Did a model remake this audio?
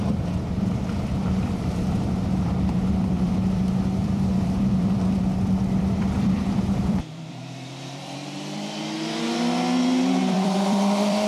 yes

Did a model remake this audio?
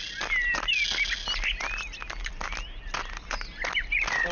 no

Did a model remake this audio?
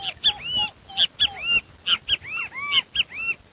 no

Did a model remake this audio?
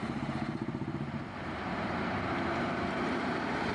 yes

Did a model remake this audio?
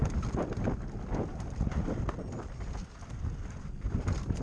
no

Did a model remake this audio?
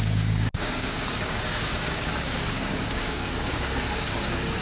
yes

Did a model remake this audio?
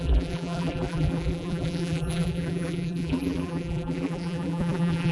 yes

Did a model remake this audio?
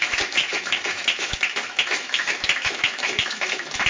yes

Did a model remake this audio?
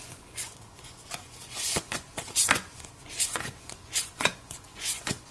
yes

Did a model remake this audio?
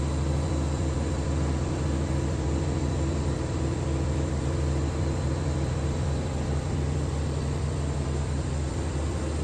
yes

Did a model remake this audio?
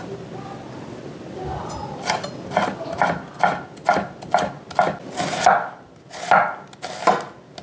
no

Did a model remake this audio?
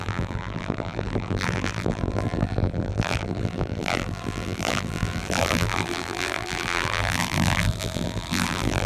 yes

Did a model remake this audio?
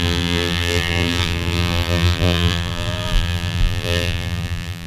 yes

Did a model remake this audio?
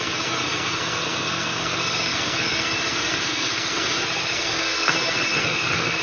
yes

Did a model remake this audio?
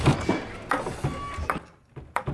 no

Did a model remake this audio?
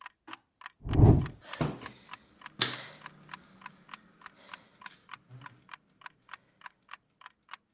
no